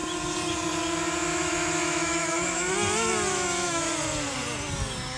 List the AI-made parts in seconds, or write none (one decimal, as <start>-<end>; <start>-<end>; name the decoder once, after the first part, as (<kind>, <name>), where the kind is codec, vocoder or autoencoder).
1.3-2.7 (autoencoder, DAC-VAE); 3.3-3.9